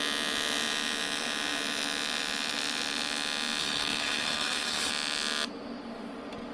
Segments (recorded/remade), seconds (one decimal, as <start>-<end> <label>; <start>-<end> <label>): 0.0-3.6 recorded; 3.6-4.9 remade; 4.9-6.5 recorded